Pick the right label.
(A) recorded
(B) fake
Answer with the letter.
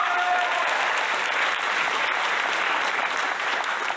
A